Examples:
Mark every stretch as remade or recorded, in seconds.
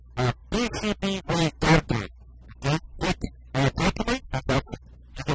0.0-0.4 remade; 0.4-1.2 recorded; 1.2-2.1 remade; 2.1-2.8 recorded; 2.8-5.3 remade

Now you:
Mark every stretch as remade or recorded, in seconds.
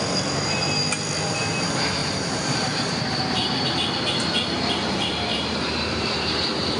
0.0-2.0 recorded; 2.0-3.7 remade; 3.7-4.8 recorded; 4.8-6.8 remade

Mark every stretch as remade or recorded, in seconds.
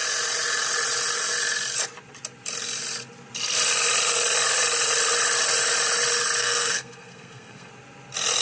0.0-6.4 recorded; 6.4-7.7 remade; 7.7-8.4 recorded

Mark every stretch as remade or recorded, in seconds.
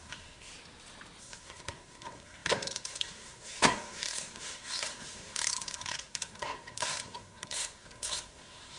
0.0-0.5 remade; 0.5-1.2 recorded; 1.2-8.8 remade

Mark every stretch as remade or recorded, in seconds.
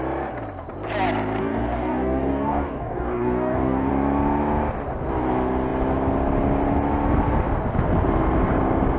0.0-1.4 recorded; 1.4-3.9 remade; 3.9-9.0 recorded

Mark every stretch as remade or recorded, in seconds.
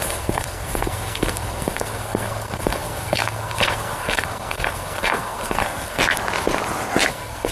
0.0-6.0 remade; 6.0-7.1 recorded; 7.1-7.5 remade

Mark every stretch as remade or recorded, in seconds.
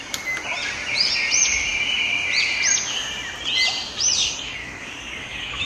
0.0-4.6 recorded; 4.6-5.6 remade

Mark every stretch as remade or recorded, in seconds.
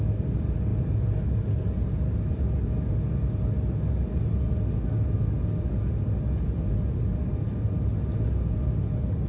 0.0-9.3 recorded